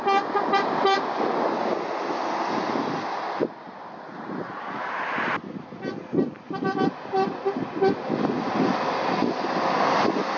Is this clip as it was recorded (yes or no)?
yes